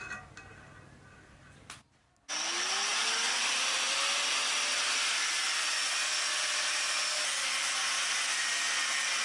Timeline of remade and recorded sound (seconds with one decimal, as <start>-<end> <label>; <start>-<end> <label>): 0.0-9.2 recorded